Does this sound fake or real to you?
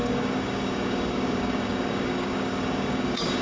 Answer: fake